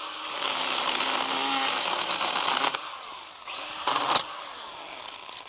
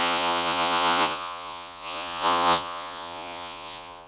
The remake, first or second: second